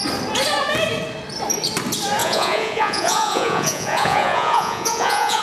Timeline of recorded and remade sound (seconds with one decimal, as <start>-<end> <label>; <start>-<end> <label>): 0.0-2.2 recorded; 2.2-5.4 remade